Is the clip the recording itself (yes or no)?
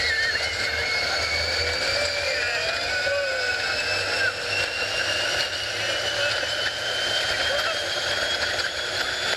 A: yes